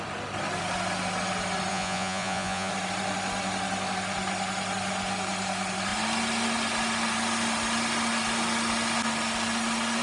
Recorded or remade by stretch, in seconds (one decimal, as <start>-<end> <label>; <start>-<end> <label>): 0.0-1.7 recorded; 1.7-2.7 remade; 2.7-10.0 recorded